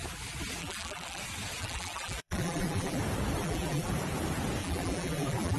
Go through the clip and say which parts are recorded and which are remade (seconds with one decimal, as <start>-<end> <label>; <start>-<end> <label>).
0.0-0.6 recorded; 0.6-1.2 remade; 1.2-1.6 recorded; 1.6-3.0 remade; 3.0-3.4 recorded; 3.4-3.9 remade; 3.9-4.6 recorded; 4.6-5.6 remade